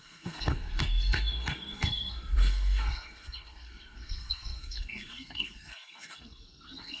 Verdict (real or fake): fake